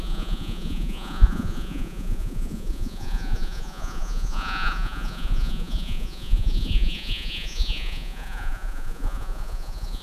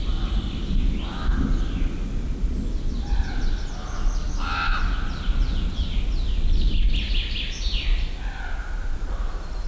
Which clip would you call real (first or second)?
second